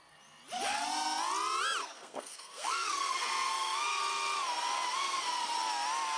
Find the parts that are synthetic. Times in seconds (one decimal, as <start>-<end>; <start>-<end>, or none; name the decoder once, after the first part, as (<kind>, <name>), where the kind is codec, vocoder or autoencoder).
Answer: 1.8-4.0 (codec, SNAC)